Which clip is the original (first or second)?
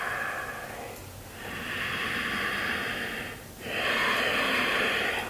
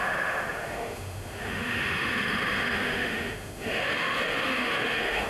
first